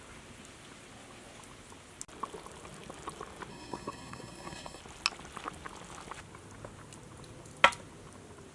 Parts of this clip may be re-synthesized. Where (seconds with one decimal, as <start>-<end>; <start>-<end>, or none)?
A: 3.5-4.8